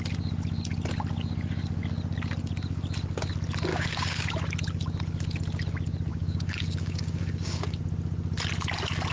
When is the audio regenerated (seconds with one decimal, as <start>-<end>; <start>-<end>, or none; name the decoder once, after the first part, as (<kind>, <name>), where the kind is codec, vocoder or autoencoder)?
3.7-4.3 (codec, DAC); 6.1-7.8